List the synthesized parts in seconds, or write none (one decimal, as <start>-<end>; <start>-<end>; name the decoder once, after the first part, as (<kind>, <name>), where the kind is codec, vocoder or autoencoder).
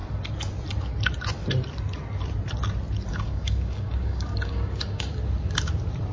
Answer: 3.1-5.1 (codec, DAC)